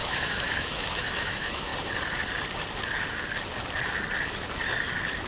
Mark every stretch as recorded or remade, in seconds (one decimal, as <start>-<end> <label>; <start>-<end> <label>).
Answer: 0.0-1.7 remade; 1.7-5.3 recorded